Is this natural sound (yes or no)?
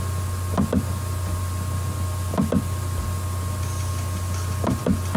yes